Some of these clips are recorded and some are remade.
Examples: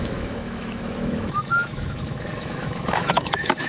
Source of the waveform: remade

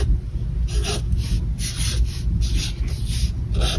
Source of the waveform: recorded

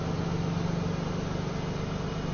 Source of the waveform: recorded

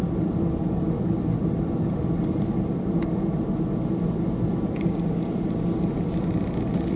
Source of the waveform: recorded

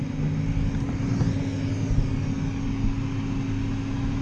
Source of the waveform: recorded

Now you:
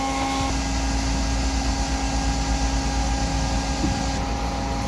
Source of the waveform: recorded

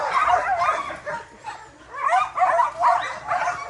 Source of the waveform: recorded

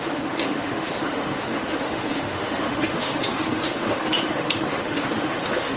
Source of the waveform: remade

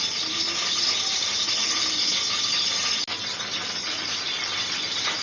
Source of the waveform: recorded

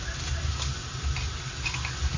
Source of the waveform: recorded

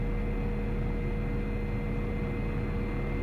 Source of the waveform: recorded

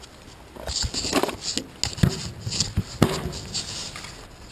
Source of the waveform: recorded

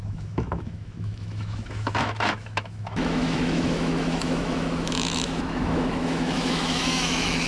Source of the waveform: remade